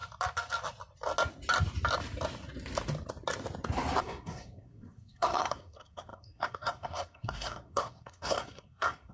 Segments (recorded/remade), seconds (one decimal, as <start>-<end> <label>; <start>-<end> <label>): 0.0-4.0 recorded; 4.0-9.1 remade